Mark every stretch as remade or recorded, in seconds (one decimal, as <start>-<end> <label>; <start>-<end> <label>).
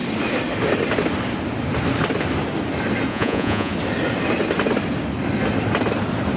0.0-3.1 recorded; 3.1-3.7 remade; 3.7-6.4 recorded